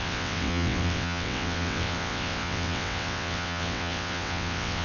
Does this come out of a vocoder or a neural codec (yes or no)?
yes